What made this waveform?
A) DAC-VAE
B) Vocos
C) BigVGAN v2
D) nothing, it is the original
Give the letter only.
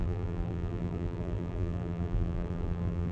C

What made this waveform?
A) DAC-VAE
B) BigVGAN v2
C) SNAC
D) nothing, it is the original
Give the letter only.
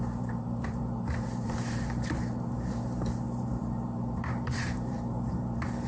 B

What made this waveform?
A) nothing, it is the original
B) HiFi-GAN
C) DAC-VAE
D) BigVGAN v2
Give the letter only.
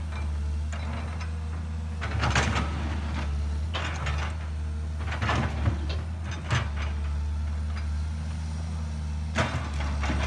A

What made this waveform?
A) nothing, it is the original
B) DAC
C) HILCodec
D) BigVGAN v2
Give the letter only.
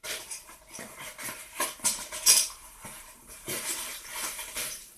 D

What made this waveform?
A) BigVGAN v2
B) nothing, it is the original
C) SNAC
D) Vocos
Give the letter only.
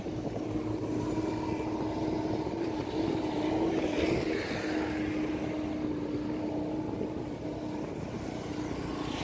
B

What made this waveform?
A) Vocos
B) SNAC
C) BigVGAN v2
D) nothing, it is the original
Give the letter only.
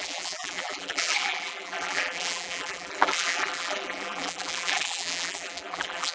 C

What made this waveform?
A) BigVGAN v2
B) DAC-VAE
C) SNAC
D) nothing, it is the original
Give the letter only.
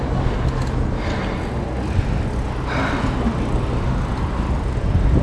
D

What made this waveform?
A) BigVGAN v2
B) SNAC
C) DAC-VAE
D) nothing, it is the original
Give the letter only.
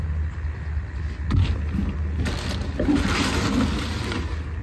D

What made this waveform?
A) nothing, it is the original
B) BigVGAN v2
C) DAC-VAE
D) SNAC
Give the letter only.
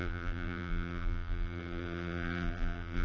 B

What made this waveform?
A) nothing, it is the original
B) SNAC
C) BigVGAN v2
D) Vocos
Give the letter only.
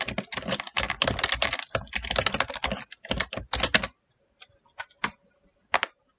A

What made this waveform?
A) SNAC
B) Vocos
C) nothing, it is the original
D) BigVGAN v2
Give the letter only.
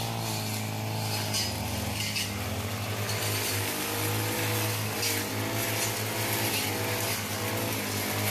C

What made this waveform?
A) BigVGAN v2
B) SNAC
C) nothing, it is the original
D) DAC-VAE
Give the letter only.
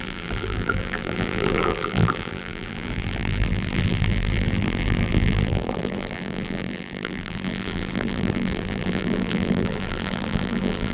A